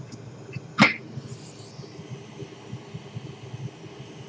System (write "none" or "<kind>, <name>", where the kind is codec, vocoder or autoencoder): none